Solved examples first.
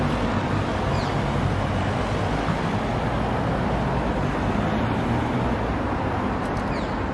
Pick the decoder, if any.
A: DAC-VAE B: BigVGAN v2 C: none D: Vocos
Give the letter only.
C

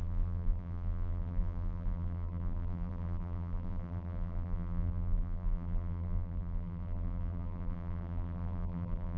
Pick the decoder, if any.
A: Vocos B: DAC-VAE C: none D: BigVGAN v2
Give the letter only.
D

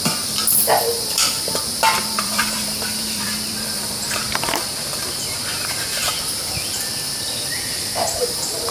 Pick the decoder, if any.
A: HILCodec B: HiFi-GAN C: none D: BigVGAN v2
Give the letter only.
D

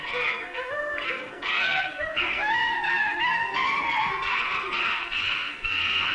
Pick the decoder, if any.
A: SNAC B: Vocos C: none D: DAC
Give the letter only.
A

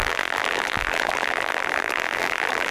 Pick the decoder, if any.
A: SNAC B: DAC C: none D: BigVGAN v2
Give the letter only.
D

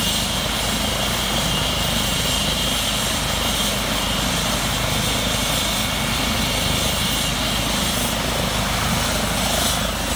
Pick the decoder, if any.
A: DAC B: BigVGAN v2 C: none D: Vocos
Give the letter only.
C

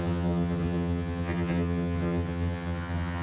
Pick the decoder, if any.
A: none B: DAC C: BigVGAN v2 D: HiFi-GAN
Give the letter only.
D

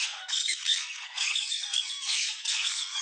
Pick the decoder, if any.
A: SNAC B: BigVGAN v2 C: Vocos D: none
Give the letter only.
A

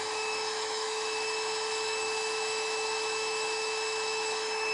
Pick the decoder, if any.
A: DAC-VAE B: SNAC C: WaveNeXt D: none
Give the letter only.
A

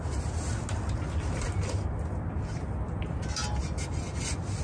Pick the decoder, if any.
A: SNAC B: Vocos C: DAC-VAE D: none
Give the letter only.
D